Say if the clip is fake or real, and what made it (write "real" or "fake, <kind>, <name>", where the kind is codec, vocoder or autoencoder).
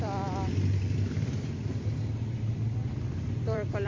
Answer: fake, vocoder, BigVGAN v2